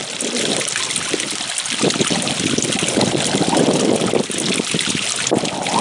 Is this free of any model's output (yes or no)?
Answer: yes